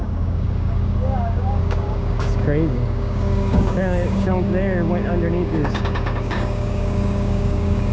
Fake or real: fake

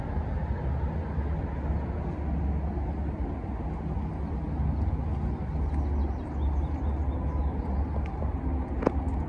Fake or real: real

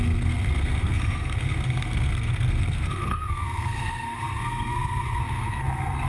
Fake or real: fake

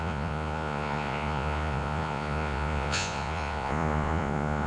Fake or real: fake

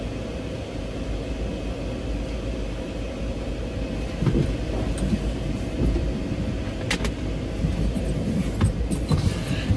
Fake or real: real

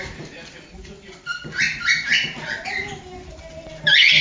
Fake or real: real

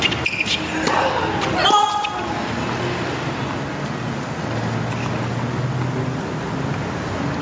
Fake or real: real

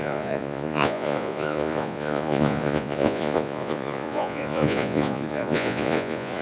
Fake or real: fake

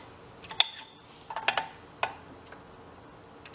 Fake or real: real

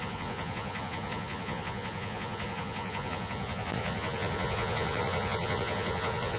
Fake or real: fake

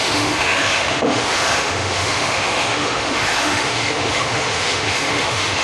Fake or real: fake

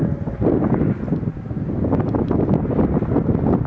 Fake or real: real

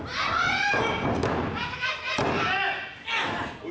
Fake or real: real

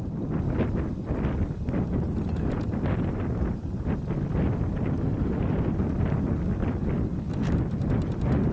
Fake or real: real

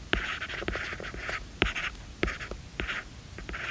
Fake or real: real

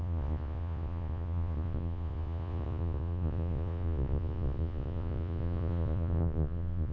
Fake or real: fake